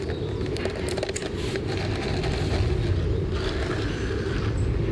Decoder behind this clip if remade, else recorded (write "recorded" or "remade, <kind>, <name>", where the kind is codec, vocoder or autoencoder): recorded